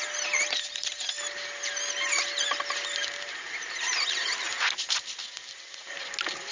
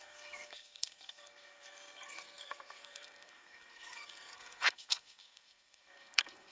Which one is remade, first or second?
second